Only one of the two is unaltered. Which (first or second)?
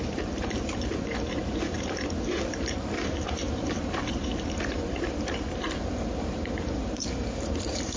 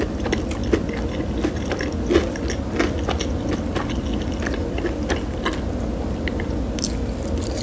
second